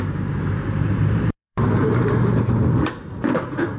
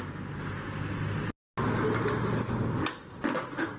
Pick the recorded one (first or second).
second